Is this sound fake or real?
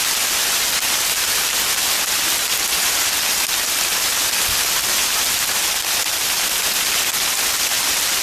real